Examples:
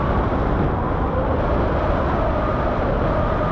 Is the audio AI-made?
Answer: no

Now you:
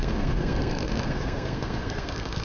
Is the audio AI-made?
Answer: yes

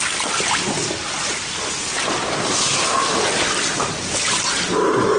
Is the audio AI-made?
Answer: no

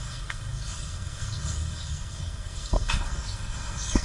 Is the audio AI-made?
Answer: yes